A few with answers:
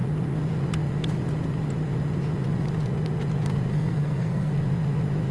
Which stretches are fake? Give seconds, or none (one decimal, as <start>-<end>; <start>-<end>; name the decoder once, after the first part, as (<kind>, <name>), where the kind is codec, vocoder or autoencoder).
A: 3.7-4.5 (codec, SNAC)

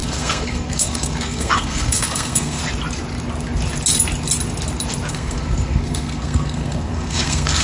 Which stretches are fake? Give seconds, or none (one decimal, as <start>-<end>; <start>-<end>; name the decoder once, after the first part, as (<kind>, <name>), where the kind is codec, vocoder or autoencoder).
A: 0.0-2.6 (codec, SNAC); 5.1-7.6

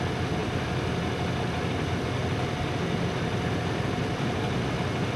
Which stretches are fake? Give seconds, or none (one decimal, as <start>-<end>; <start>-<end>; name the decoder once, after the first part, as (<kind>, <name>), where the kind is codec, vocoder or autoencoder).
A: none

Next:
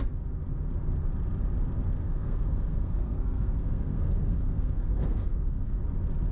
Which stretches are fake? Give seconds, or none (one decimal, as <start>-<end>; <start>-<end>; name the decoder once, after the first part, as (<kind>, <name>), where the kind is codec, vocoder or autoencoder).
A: 2.0-5.8 (codec, SNAC)

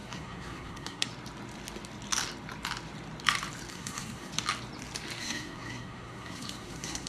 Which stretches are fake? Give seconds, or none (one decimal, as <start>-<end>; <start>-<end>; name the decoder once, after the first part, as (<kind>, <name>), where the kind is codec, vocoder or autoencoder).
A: 0.0-1.1 (codec, SNAC); 3.7-4.3; 5.2-7.1

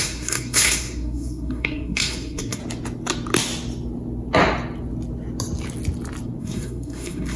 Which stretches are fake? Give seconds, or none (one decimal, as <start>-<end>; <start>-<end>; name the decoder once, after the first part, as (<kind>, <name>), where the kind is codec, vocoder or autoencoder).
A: 0.0-2.6 (codec, SNAC); 6.4-7.4

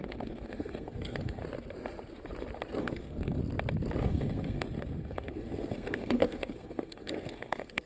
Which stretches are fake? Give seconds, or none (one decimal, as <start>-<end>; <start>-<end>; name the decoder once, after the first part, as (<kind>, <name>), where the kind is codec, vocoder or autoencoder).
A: 0.0-1.4 (codec, SNAC); 2.8-3.4; 4.0-7.9